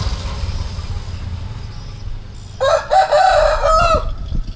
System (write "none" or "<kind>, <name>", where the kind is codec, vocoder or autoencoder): none